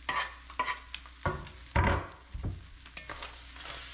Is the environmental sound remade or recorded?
recorded